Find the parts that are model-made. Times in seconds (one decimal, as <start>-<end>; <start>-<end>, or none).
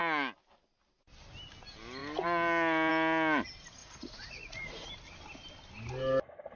3.8-4.9